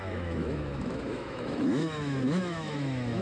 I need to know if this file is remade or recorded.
remade